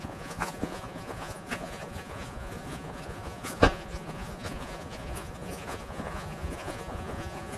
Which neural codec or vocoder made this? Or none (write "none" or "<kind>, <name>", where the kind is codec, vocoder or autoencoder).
vocoder, Vocos